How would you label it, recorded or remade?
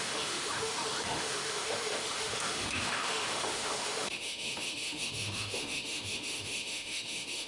remade